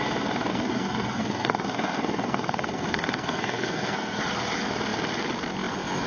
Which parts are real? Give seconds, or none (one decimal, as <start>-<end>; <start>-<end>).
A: 0.0-0.5; 4.2-6.1